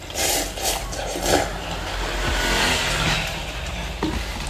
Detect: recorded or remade recorded